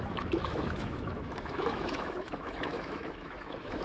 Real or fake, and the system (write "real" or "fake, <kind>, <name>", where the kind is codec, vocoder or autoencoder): fake, autoencoder, DAC-VAE